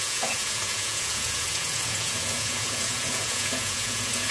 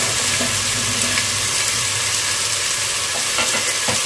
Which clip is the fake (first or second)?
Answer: first